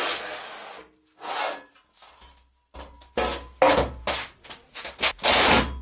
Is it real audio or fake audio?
real